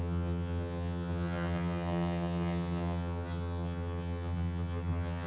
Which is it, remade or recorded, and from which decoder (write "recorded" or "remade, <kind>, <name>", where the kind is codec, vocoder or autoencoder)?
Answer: remade, vocoder, HiFi-GAN